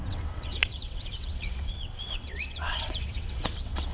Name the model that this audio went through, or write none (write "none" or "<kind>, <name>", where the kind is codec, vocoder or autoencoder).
vocoder, WaveNeXt